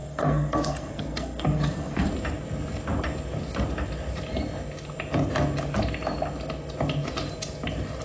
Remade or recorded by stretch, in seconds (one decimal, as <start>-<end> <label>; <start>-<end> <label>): 0.0-2.1 remade; 2.1-8.0 recorded